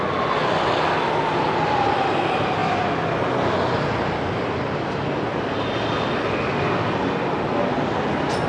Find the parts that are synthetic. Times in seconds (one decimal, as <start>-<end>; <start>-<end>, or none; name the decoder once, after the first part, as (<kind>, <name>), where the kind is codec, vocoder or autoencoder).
none